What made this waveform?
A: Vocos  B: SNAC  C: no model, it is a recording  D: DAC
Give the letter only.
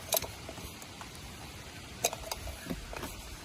C